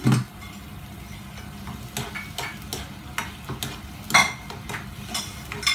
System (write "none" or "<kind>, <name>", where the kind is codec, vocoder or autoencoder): none